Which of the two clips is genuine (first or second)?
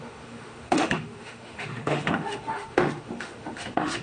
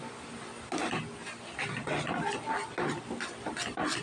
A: second